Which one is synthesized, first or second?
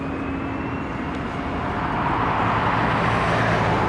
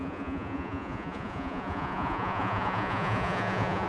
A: second